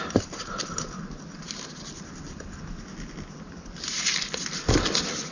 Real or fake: real